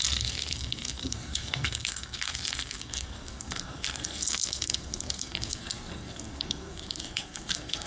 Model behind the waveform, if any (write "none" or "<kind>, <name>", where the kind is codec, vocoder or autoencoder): codec, SNAC